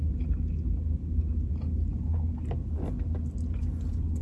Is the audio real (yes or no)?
yes